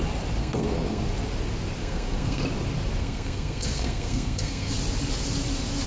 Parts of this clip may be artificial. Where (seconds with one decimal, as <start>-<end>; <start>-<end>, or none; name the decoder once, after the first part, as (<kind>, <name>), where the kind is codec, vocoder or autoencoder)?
0.4-1.0 (codec, SNAC); 1.8-2.4; 3.0-4.7